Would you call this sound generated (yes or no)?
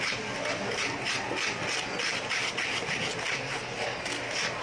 no